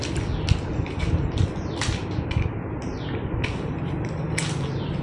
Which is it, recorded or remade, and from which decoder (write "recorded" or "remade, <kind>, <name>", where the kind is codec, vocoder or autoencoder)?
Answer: recorded